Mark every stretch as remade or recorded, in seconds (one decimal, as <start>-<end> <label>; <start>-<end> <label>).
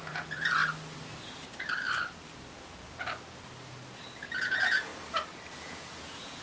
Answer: 0.0-0.6 remade; 0.6-4.4 recorded; 4.4-4.9 remade; 4.9-5.6 recorded; 5.6-6.4 remade